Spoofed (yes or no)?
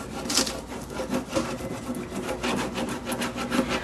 no